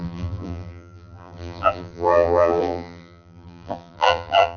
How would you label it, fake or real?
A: fake